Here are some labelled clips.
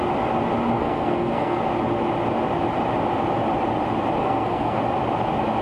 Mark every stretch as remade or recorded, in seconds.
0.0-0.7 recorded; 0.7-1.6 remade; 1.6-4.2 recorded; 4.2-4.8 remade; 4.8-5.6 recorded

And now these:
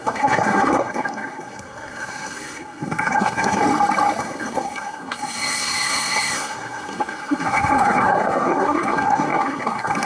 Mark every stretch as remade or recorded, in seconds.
0.0-3.6 remade; 3.6-4.2 recorded; 4.2-10.1 remade

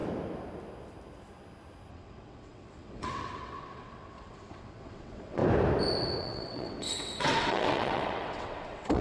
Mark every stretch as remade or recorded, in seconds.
0.0-1.9 recorded; 1.9-5.4 remade; 5.4-6.2 recorded; 6.2-9.0 remade

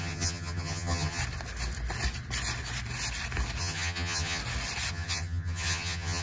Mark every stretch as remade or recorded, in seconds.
0.0-1.2 remade; 1.2-3.6 recorded; 3.6-4.4 remade; 4.4-4.9 recorded; 4.9-6.2 remade

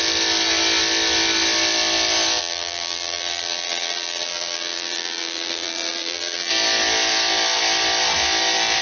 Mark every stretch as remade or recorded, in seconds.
0.0-2.4 recorded; 2.4-6.5 remade; 6.5-8.8 recorded